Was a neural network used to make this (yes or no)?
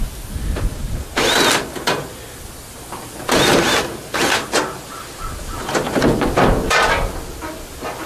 no